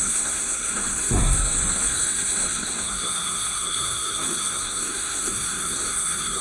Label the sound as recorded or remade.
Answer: remade